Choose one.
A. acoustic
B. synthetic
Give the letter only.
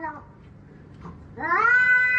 B